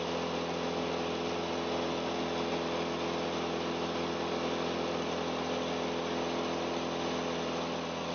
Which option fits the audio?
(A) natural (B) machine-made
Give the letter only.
A